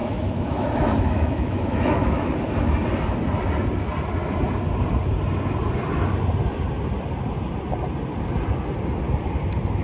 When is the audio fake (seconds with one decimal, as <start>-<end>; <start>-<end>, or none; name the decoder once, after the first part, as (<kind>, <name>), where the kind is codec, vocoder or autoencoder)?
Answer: 0.0-2.4 (autoencoder, DAC-VAE)